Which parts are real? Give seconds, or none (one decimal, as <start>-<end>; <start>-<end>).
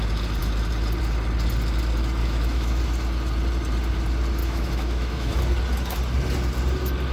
0.0-2.2; 2.8-4.4; 5.4-7.1